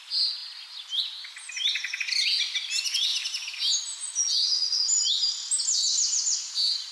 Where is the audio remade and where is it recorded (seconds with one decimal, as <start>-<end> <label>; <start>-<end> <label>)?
0.0-3.1 recorded; 3.1-3.7 remade; 3.7-6.9 recorded